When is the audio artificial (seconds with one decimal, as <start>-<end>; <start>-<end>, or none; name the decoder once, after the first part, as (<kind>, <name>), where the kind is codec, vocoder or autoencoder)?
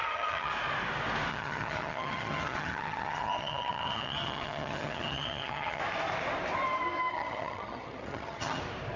0.0-0.5 (vocoder, HiFi-GAN); 1.3-5.8; 7.1-8.6